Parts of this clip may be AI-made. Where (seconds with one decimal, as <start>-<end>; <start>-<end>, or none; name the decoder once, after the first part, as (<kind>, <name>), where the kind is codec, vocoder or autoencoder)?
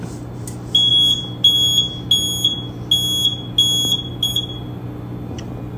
none